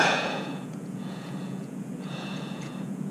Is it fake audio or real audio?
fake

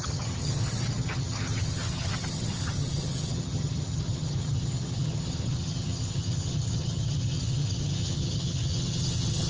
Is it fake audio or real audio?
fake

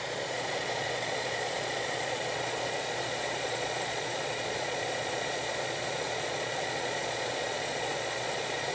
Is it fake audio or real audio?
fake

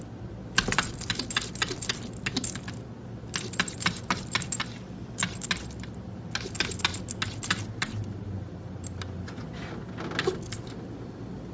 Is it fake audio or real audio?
real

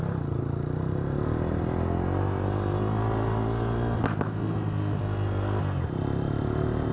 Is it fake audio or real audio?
real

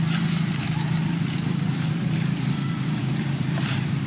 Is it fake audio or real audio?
fake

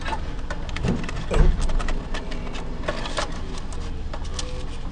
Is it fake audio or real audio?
real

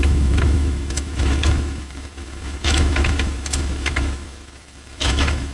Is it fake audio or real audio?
fake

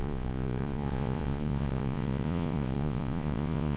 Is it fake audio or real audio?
fake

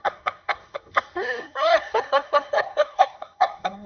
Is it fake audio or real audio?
fake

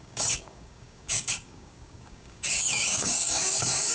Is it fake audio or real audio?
fake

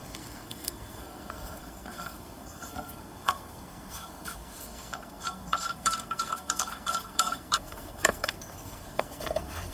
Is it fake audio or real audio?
fake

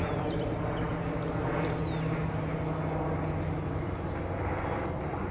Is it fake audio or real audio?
real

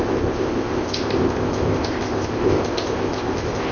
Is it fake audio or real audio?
fake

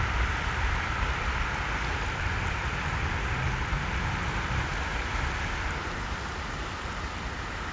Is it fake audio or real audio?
real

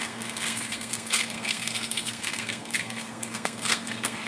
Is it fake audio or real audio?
fake